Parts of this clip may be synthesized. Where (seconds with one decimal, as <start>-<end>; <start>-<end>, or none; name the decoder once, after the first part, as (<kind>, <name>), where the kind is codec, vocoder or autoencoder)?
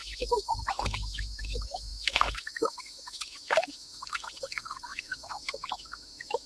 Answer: 0.0-6.5 (autoencoder, DAC-VAE)